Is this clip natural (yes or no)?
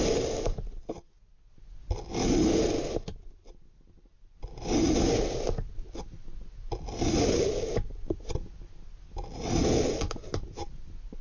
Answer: yes